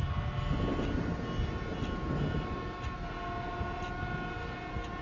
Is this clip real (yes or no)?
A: yes